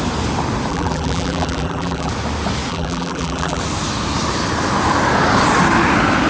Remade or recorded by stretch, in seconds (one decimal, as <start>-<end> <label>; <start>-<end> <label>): 0.0-0.7 recorded; 0.7-2.1 remade; 2.1-2.7 recorded; 2.7-3.6 remade; 3.6-6.3 recorded